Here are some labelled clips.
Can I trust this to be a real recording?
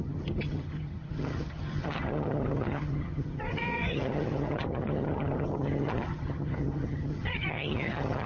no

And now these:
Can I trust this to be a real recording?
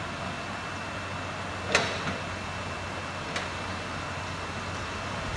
yes